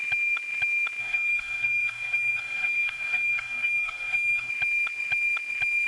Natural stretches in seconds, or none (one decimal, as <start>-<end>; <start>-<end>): 0.0-1.0; 4.5-5.9